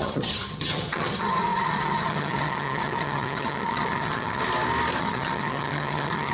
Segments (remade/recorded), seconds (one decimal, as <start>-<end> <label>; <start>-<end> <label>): 0.0-4.4 remade; 4.4-5.0 recorded; 5.0-6.3 remade